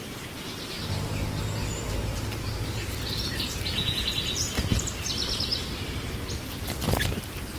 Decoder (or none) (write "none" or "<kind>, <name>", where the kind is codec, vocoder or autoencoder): none